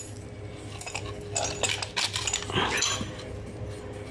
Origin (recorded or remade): recorded